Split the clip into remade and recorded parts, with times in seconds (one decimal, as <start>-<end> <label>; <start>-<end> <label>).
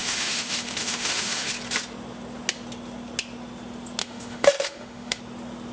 0.0-1.5 remade; 1.5-4.0 recorded; 4.0-5.2 remade; 5.2-5.7 recorded